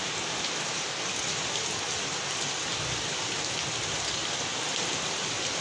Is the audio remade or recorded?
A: recorded